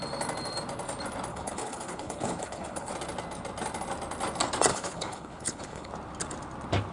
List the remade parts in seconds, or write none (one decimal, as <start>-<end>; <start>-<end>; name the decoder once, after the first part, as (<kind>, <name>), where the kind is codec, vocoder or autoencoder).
1.3-2.9 (codec, HILCodec); 4.7-5.9